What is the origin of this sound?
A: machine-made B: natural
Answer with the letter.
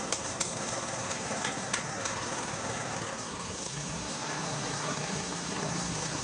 A